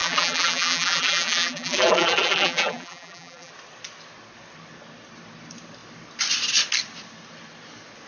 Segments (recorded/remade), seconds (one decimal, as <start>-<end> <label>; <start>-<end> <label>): 0.0-3.5 remade; 3.5-8.1 recorded